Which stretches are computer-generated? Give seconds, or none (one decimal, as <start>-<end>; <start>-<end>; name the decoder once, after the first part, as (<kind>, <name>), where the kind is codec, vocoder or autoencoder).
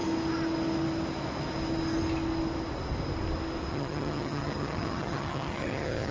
3.7-6.1 (vocoder, HiFi-GAN)